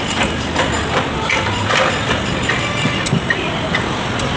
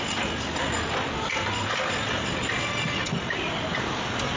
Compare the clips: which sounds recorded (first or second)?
second